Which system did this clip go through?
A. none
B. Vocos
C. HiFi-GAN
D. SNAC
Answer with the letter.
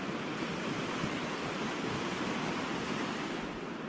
A